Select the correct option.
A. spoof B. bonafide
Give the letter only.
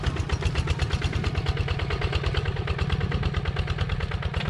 B